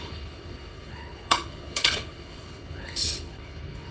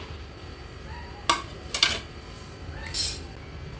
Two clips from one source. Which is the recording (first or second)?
second